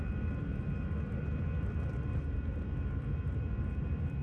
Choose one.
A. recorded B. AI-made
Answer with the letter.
B